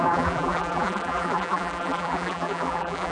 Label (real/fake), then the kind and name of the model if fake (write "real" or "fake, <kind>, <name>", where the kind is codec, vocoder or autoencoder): fake, vocoder, BigVGAN v2